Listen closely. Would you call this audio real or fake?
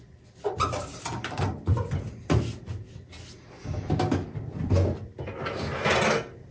real